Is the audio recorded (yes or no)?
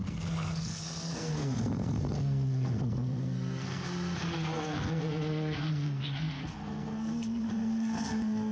no